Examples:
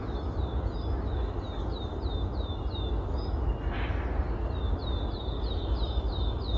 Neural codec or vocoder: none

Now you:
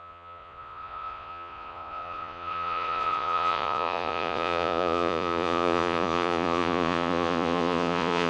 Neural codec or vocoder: vocoder, Vocos